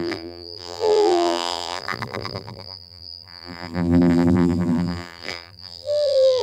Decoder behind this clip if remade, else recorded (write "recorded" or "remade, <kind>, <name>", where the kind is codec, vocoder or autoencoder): remade, vocoder, BigVGAN v2